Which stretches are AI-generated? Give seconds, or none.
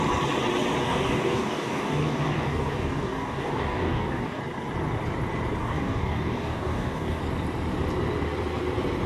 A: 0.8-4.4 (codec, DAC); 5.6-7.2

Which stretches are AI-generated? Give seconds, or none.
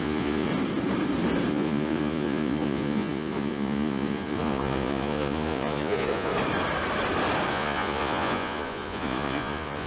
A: 0.0-0.5 (vocoder, Vocos); 1.5-6.3; 7.5-9.9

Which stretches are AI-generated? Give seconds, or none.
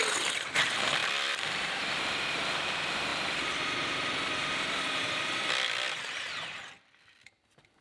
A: 1.0-2.0 (vocoder, BigVGAN v2); 3.1-7.8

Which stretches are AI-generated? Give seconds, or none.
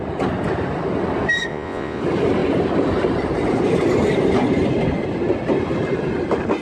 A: 1.5-2.0 (vocoder, Vocos)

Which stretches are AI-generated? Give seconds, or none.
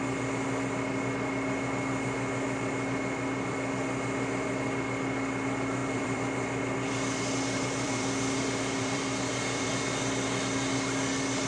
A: 5.8-9.7 (vocoder, BigVGAN v2)